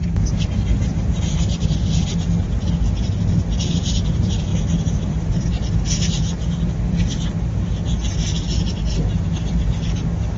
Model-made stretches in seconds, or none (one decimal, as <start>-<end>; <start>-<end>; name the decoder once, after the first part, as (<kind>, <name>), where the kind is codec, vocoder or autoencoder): none